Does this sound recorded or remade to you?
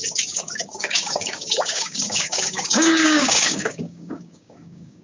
remade